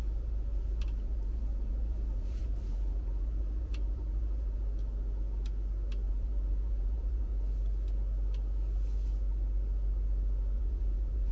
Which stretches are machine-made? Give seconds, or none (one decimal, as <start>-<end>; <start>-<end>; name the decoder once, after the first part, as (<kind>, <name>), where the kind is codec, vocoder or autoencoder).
0.0-4.6 (vocoder, BigVGAN v2); 6.1-7.3; 10.6-11.3